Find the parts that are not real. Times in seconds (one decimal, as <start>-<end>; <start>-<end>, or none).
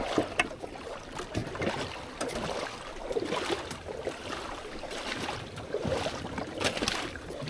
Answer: none